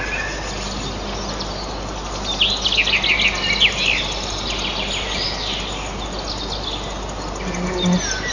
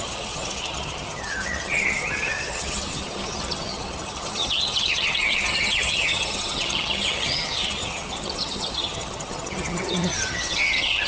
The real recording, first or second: first